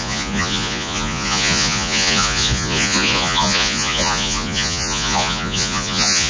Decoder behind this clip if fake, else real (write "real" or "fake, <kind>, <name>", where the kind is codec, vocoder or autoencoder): fake, vocoder, Vocos